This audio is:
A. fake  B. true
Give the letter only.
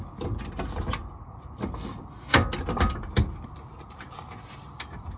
B